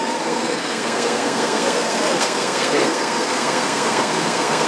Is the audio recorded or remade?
remade